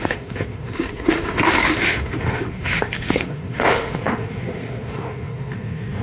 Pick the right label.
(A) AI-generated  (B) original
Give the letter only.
A